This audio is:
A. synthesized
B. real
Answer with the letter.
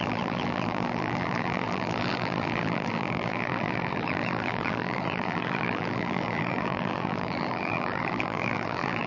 A